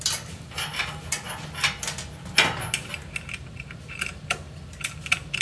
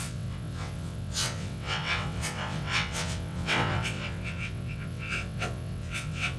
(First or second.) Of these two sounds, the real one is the first